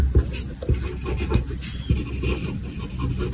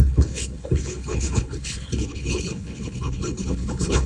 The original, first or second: first